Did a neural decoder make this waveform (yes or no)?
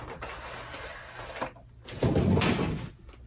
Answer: no